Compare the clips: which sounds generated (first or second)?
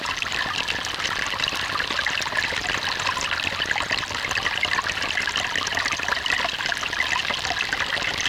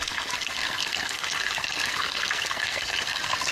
second